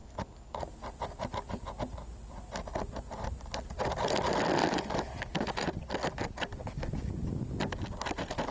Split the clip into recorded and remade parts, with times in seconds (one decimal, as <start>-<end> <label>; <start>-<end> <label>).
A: 0.0-8.5 recorded